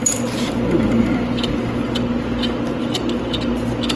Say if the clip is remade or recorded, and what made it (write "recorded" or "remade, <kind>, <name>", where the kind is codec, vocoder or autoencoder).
recorded